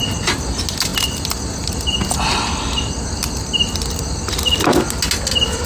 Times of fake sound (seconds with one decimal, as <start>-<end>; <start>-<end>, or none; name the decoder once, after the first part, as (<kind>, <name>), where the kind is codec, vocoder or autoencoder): none